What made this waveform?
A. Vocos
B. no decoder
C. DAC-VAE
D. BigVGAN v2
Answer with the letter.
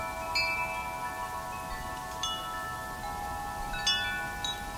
B